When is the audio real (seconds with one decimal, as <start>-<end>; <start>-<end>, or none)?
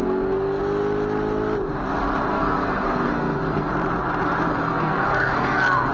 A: 0.6-2.3; 3.7-4.5